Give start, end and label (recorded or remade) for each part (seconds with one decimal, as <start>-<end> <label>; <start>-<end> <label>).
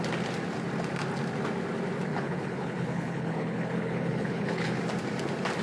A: 0.0-2.1 recorded; 2.1-4.8 remade; 4.8-5.6 recorded